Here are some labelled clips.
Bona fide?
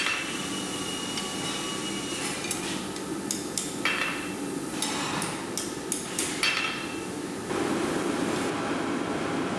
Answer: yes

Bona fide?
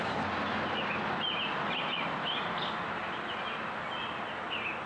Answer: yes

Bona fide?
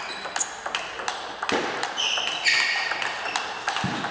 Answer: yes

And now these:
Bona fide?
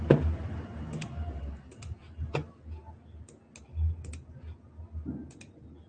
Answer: yes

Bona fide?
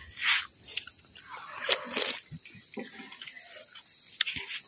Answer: yes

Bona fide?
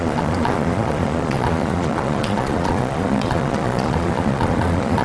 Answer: no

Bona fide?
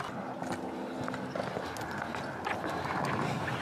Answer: yes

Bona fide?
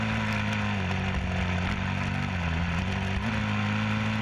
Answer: yes